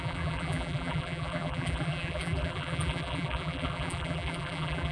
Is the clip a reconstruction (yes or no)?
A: yes